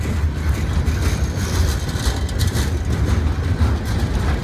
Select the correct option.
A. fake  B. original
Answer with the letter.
B